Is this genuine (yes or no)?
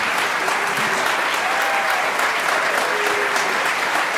yes